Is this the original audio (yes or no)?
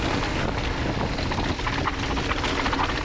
yes